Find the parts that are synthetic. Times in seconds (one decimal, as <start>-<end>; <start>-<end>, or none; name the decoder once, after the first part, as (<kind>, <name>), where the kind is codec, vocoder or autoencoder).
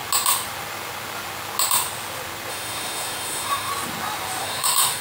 2.5-3.7 (autoencoder, DAC-VAE); 4.4-5.0